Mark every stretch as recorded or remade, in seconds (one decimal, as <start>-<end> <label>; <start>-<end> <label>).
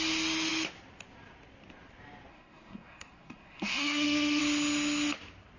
0.0-2.3 recorded; 2.3-4.4 remade; 4.4-5.6 recorded